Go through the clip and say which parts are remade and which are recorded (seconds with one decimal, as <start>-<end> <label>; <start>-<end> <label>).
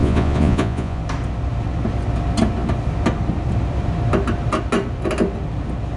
0.0-1.0 remade; 1.0-6.0 recorded